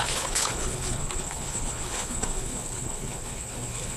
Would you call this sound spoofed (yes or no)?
yes